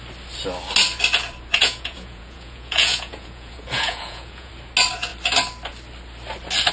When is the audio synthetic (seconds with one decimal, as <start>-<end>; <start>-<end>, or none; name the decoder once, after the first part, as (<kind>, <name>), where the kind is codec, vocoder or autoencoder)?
1.6-4.5 (vocoder, Vocos)